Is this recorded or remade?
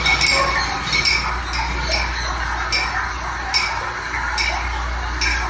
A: recorded